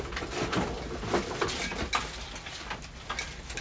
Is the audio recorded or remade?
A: recorded